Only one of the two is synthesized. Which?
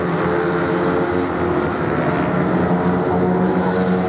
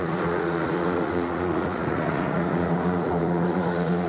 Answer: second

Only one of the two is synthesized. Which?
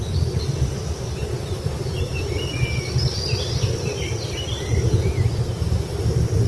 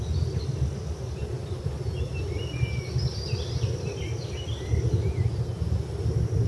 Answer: first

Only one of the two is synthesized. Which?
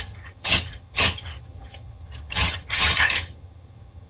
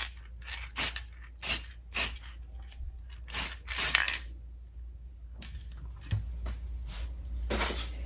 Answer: first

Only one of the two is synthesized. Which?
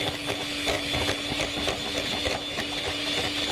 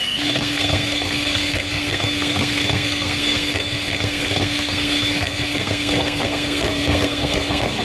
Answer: second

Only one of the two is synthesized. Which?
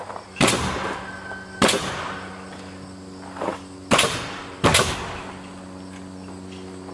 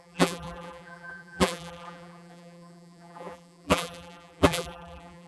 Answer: second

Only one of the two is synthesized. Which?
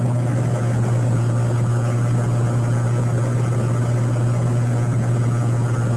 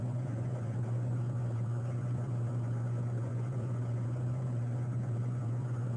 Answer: second